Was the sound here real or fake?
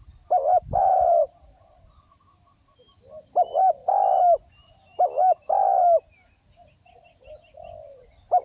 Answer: real